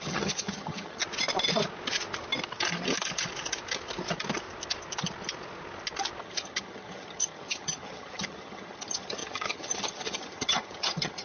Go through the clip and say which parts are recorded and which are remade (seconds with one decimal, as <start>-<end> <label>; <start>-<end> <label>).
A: 0.0-1.0 remade; 1.0-6.2 recorded; 6.2-11.2 remade